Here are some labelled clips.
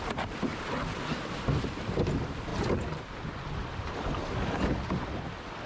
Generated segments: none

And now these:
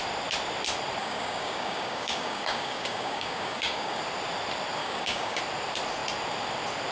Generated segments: 1.0-4.0 (codec, DAC); 4.8-5.4

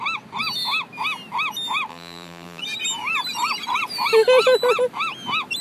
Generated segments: 1.9-2.6 (vocoder, BigVGAN v2)

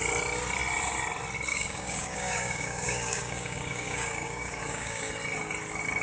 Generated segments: 1.5-5.1 (codec, DAC)

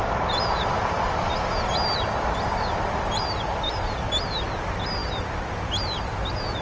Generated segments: none

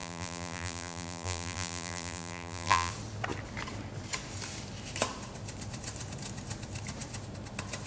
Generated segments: 0.0-2.9 (vocoder, BigVGAN v2)